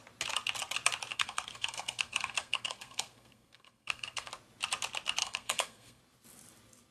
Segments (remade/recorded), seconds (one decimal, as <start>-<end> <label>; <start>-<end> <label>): 0.0-1.1 recorded; 1.1-4.3 remade; 4.3-5.2 recorded; 5.2-6.0 remade; 6.0-6.9 recorded